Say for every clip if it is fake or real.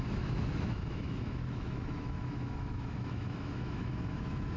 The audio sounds fake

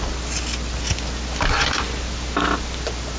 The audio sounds real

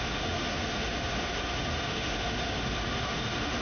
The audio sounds fake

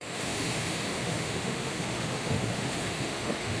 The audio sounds fake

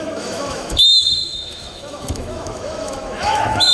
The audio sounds fake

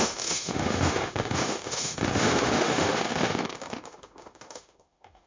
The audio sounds fake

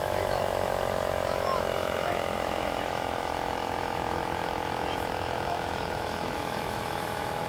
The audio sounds fake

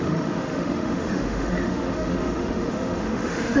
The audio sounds fake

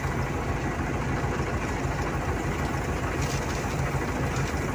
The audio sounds real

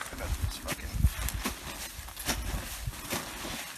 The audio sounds real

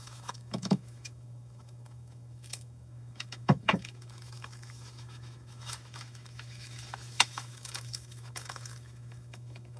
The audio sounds fake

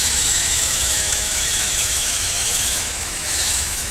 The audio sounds fake